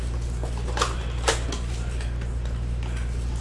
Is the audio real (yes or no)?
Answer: yes